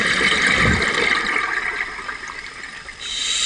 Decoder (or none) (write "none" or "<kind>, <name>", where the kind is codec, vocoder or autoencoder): vocoder, BigVGAN v2